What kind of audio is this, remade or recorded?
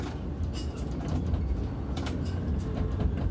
recorded